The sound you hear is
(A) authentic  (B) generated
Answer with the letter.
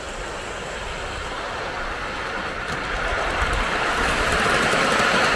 A